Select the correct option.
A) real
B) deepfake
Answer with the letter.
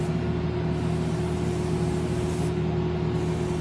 A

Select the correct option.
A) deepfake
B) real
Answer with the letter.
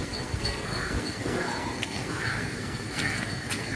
A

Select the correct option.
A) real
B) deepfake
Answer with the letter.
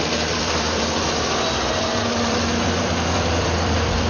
B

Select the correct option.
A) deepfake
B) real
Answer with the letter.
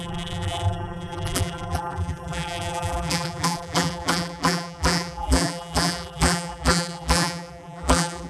A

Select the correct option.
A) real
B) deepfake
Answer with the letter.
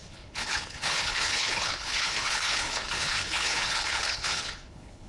B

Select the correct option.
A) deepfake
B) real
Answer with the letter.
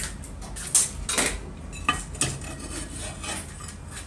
B